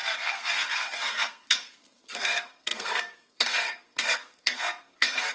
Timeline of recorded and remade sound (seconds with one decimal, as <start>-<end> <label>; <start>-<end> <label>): 0.0-5.3 remade

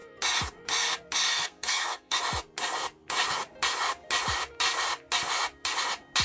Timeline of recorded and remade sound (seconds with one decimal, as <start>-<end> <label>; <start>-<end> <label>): 0.0-1.3 recorded; 1.3-2.2 remade; 2.2-6.2 recorded